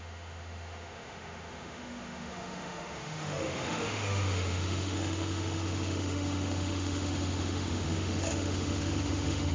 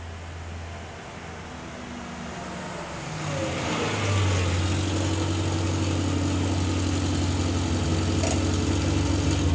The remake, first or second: first